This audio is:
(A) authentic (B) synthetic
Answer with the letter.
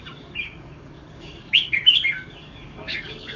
B